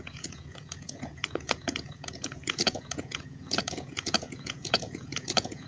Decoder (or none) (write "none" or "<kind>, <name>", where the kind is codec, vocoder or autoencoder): vocoder, Vocos